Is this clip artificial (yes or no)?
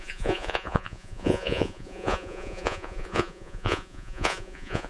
yes